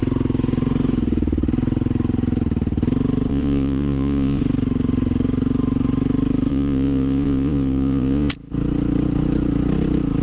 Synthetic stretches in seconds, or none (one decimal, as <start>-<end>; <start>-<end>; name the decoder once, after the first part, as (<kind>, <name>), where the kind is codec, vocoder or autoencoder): 3.3-4.4 (vocoder, Vocos); 6.5-8.3